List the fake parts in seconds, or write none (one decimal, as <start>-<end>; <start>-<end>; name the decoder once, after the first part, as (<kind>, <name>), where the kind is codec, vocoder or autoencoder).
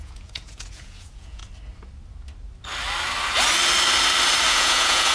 0.0-1.4 (vocoder, Vocos); 4.5-5.1